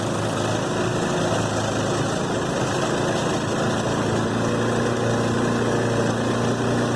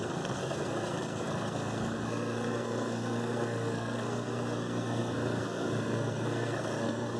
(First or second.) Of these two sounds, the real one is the first